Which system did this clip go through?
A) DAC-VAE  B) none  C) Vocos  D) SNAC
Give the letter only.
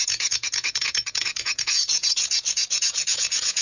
C